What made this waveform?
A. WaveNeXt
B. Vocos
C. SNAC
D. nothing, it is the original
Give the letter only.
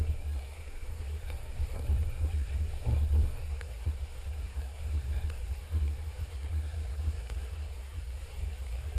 C